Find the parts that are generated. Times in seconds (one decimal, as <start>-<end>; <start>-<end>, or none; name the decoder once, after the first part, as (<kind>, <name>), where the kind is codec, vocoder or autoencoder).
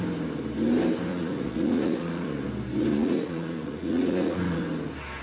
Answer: 1.1-2.5 (vocoder, Vocos); 2.9-4.6